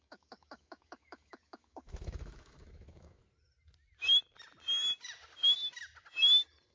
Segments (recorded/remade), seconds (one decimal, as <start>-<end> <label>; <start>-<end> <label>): 0.0-3.2 remade; 3.2-6.7 recorded